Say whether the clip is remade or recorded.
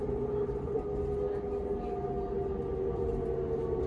recorded